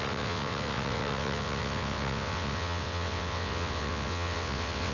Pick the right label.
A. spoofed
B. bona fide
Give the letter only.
A